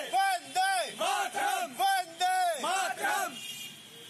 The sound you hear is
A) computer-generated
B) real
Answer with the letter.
B